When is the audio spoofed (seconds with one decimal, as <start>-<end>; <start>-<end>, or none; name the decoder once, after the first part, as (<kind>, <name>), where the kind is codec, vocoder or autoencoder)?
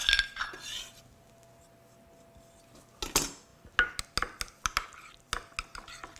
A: none